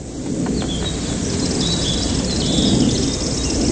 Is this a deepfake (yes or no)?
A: no